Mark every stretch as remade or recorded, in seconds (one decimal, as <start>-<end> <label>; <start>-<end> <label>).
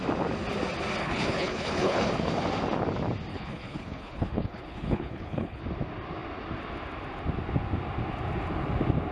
0.0-1.0 recorded; 1.0-2.1 remade; 2.1-3.3 recorded; 3.3-5.6 remade; 5.6-9.1 recorded